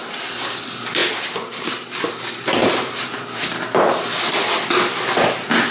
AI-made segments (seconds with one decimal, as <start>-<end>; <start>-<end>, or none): 1.0-2.1; 2.6-3.2